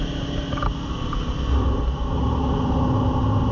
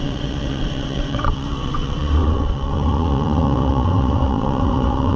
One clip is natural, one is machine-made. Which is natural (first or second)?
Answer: first